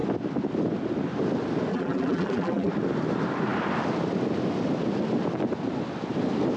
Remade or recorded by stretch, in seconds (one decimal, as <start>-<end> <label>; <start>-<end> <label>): 0.0-1.7 recorded; 1.7-2.7 remade; 2.7-6.6 recorded